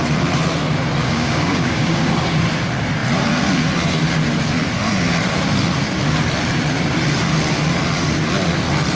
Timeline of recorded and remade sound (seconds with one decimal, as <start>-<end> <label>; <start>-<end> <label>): 0.0-1.0 recorded; 1.0-2.1 remade; 2.1-9.0 recorded